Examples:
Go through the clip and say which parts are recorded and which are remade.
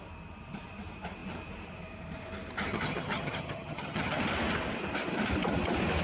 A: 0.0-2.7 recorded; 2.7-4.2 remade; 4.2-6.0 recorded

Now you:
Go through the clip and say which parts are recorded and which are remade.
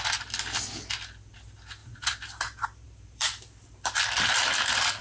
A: 0.0-1.8 recorded; 1.8-4.0 remade; 4.0-5.0 recorded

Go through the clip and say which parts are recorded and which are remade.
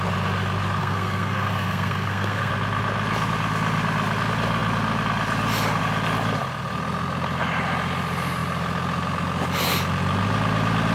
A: 0.0-0.8 recorded; 0.8-2.5 remade; 2.5-10.9 recorded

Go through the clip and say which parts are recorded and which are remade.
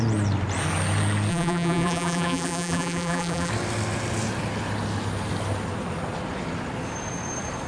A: 0.0-1.3 recorded; 1.3-3.5 remade; 3.5-7.7 recorded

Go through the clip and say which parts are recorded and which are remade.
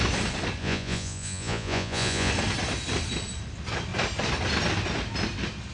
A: 0.0-0.6 recorded; 0.6-2.3 remade; 2.3-5.7 recorded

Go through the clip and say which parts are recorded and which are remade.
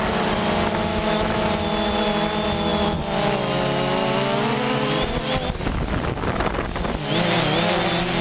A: 0.0-0.9 recorded; 0.9-1.5 remade; 1.5-8.2 recorded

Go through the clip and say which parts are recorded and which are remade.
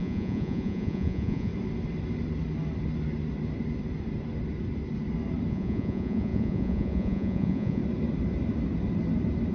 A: 0.0-1.5 remade; 1.5-5.5 recorded; 5.5-7.8 remade; 7.8-9.5 recorded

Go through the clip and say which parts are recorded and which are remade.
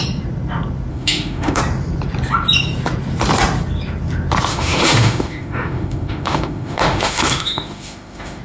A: 0.0-0.9 recorded; 0.9-1.6 remade; 1.6-4.5 recorded; 4.5-8.4 remade